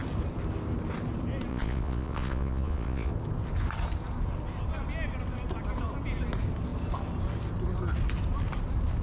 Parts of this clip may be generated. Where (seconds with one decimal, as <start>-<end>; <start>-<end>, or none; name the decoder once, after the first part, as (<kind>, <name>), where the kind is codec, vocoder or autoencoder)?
1.5-3.1 (vocoder, Vocos)

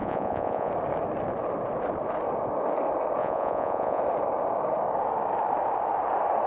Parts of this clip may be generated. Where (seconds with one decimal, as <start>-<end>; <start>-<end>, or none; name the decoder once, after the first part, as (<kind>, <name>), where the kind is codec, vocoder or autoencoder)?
0.0-0.7 (vocoder, Vocos); 3.2-4.0

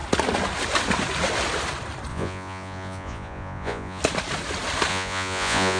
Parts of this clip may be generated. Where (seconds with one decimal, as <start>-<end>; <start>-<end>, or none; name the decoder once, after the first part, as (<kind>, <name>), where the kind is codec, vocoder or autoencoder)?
2.1-4.0 (vocoder, Vocos); 4.9-5.8

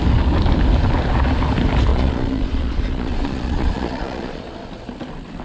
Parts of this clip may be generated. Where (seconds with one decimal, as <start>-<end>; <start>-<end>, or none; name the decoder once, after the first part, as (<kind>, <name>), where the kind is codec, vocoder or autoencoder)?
1.9-4.4 (vocoder, Vocos)